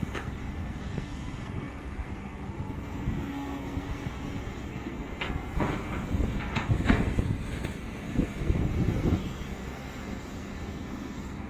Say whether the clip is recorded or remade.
remade